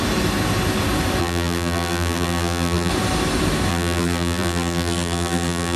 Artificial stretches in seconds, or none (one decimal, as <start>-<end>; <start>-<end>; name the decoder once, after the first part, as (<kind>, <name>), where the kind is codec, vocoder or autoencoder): 1.2-2.9 (vocoder, BigVGAN v2); 3.7-5.8